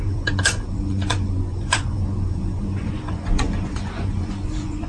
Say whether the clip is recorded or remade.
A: remade